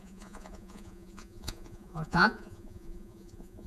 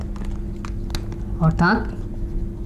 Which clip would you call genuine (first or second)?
second